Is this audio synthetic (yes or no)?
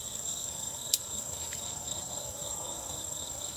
yes